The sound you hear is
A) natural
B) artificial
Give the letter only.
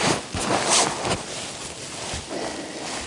A